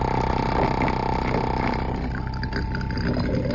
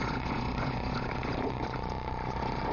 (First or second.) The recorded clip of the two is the first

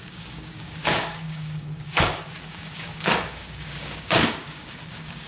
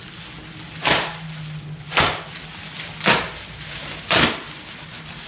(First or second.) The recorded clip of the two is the second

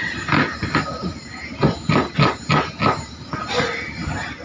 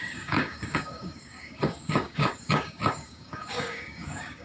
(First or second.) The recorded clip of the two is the first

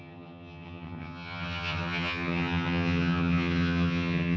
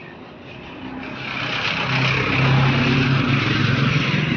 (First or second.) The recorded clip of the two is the second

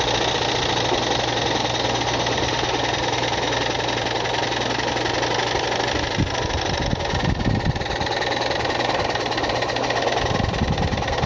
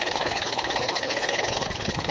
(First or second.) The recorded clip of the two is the first